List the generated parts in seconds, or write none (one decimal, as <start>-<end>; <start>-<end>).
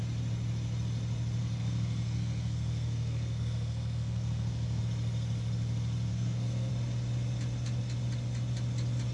1.4-4.8; 6.1-6.7